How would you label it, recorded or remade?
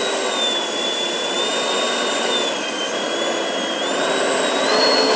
recorded